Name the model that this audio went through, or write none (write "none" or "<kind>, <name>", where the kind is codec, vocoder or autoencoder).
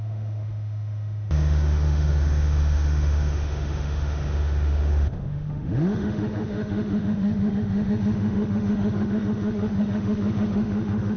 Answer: autoencoder, DAC-VAE